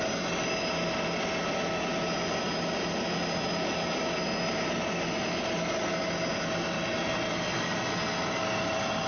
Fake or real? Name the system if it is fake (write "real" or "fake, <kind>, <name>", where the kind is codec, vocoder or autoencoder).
real